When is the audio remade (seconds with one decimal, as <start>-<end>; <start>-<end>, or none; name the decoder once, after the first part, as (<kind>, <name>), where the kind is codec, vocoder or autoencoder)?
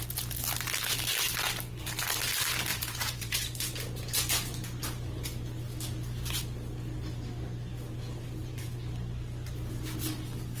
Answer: 2.7-3.4 (vocoder, Vocos)